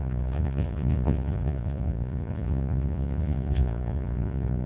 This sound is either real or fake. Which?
fake